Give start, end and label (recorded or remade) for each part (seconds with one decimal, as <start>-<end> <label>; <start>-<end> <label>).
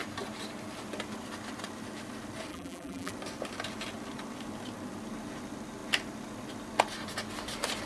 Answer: 0.0-2.5 recorded; 2.5-3.1 remade; 3.1-7.9 recorded